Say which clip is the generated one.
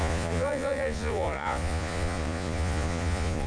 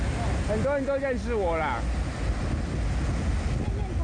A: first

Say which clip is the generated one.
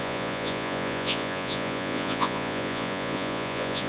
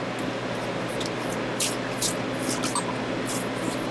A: first